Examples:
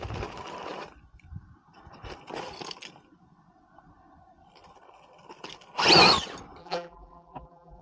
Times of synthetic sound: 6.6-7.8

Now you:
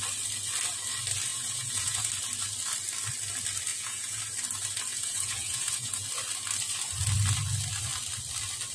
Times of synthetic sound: 1.3-2.1; 3.7-4.2; 4.9-6.1

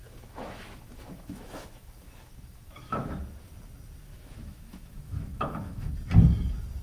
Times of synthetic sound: 0.0-3.2; 4.1-5.9

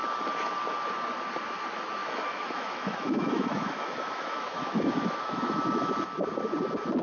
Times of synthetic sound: 2.0-6.2

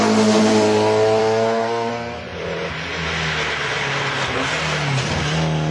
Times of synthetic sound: 1.2-1.9

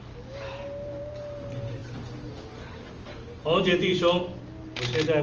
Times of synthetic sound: none

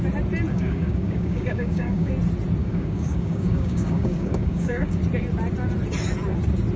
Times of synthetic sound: 0.5-2.1; 2.6-5.0